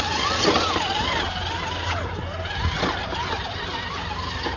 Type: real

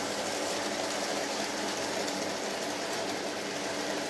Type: real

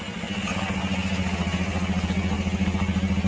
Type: real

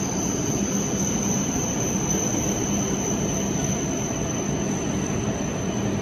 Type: fake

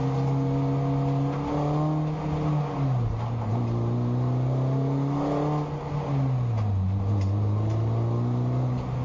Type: real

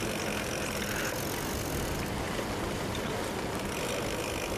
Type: real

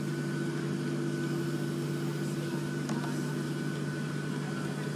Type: real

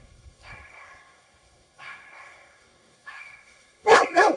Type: fake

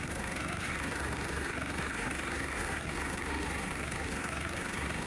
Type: fake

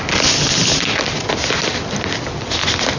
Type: real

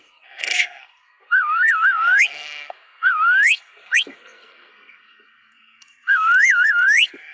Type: fake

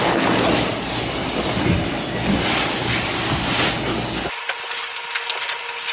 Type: real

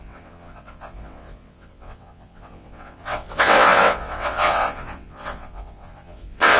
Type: fake